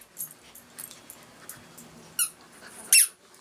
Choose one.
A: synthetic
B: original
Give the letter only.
B